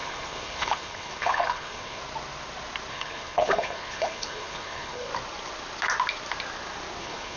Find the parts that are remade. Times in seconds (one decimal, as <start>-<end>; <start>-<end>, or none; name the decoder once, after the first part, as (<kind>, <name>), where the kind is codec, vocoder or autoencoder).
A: 0.0-2.0 (codec, HILCodec); 2.9-5.1; 7.0-7.4